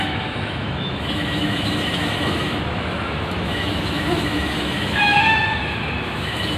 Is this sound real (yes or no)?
no